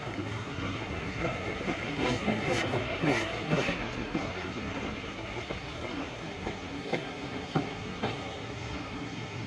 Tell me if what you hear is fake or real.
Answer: fake